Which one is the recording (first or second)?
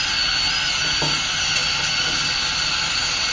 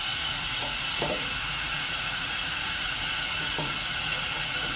first